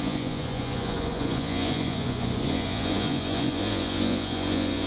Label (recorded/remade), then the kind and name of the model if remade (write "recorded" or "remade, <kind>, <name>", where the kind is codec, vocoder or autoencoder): remade, vocoder, Vocos